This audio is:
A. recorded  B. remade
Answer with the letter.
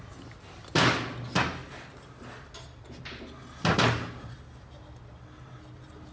A